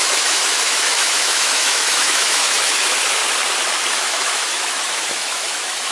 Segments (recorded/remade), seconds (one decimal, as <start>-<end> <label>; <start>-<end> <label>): 0.0-3.2 remade; 3.2-3.9 recorded; 3.9-5.9 remade